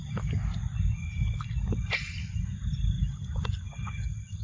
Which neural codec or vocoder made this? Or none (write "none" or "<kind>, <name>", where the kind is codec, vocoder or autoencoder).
none